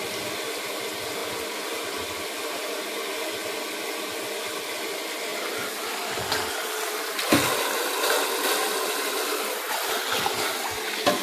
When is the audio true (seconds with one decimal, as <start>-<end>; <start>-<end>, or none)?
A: 0.0-11.2